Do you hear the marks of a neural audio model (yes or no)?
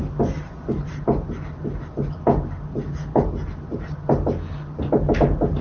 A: no